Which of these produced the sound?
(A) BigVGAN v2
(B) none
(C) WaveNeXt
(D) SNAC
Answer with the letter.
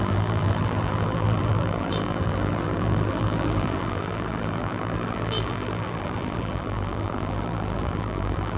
A